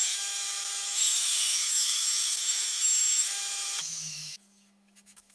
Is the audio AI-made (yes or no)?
yes